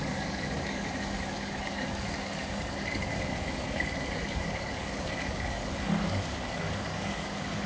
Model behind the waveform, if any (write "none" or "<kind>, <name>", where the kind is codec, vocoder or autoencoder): codec, DAC